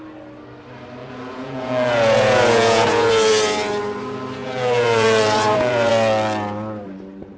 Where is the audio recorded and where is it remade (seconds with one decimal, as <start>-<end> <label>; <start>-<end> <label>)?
0.0-1.0 recorded; 1.0-3.1 remade; 3.1-4.4 recorded; 4.4-5.9 remade; 5.9-7.4 recorded

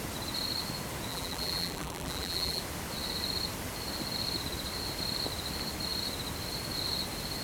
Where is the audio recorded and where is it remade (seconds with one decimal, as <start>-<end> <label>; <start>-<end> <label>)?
0.0-1.1 recorded; 1.1-2.6 remade; 2.6-7.4 recorded